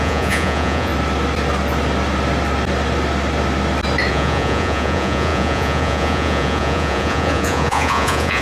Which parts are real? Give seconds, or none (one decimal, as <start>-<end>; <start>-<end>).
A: 0.9-4.1